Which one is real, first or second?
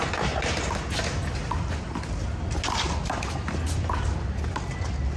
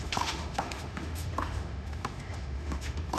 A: first